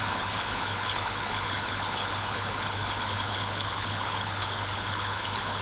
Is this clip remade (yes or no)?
yes